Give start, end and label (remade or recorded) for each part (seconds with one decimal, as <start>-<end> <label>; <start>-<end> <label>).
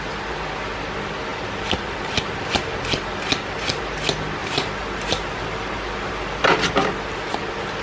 0.0-4.4 recorded; 4.4-6.7 remade; 6.7-7.8 recorded